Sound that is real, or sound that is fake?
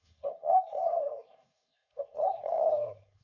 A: fake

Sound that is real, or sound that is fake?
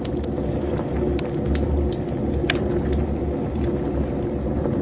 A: real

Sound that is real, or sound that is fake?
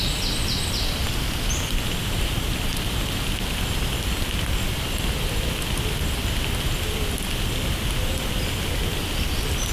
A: real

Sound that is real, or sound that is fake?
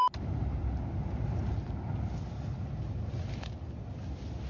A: real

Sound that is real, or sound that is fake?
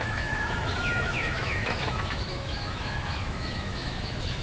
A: fake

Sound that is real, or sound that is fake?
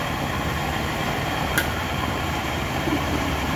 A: fake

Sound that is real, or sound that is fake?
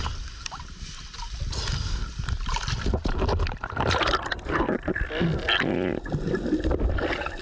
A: real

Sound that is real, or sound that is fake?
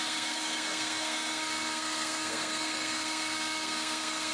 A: fake